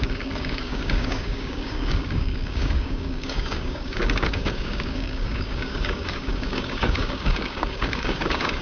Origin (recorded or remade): remade